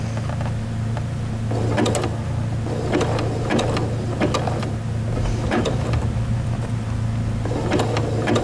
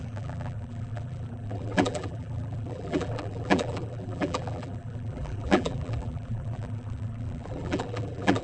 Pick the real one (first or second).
first